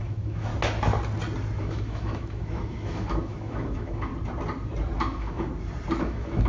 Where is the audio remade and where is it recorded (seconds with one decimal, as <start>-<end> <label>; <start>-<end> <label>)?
0.0-0.5 remade; 0.5-1.6 recorded; 1.6-4.1 remade; 4.1-5.0 recorded; 5.0-5.5 remade; 5.5-6.0 recorded; 6.0-6.5 remade